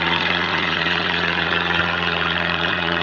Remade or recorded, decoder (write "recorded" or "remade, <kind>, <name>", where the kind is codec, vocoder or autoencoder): remade, vocoder, Vocos